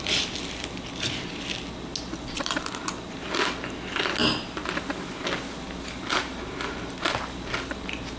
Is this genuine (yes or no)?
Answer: yes